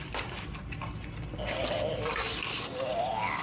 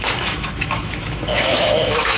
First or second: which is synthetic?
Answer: second